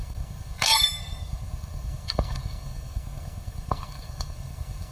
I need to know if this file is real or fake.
fake